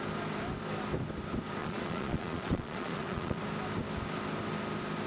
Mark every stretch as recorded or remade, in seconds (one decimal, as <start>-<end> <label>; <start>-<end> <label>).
0.0-1.6 recorded; 1.6-3.4 remade; 3.4-5.1 recorded